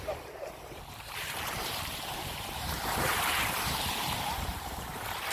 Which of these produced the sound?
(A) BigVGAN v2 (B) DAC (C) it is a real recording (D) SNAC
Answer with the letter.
A